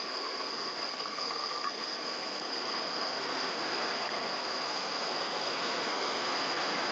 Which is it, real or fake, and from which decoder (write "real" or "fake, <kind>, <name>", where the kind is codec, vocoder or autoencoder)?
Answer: fake, codec, SNAC